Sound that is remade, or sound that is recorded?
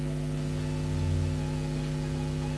recorded